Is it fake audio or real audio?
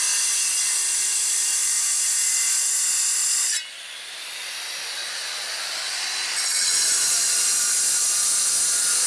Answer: real